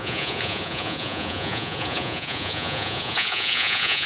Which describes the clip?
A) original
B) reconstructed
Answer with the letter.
B